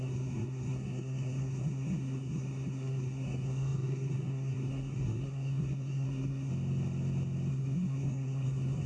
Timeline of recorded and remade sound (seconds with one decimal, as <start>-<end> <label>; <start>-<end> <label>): 0.0-6.5 remade; 6.5-7.5 recorded; 7.5-8.9 remade

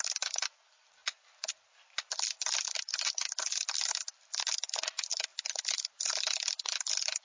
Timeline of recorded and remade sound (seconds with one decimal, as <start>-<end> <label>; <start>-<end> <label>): 0.0-7.2 recorded

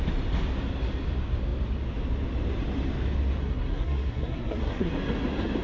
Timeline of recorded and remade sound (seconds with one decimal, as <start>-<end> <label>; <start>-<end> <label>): 0.0-3.4 recorded; 3.4-4.9 remade; 4.9-5.6 recorded

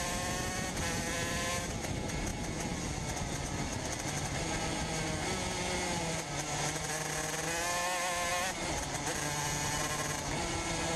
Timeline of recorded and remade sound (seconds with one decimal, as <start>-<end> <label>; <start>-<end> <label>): 0.0-11.0 recorded

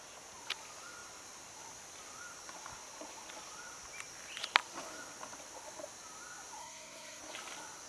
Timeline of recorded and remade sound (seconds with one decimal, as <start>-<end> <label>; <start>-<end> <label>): 0.0-6.6 recorded; 6.6-7.2 remade; 7.2-7.9 recorded

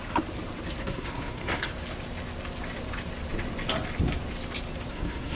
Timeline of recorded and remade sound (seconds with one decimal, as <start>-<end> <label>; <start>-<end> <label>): 0.0-0.8 recorded; 0.8-1.7 remade; 1.7-4.9 recorded; 4.9-5.4 remade

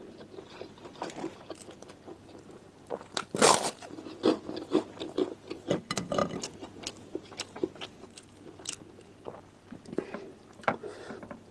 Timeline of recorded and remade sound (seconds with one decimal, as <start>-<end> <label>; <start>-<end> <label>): 0.0-11.5 recorded